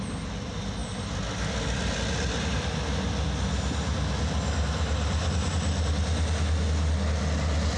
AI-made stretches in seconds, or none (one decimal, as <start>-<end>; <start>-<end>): none